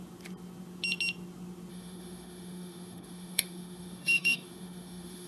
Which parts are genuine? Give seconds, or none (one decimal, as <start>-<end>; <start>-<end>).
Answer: 0.0-1.7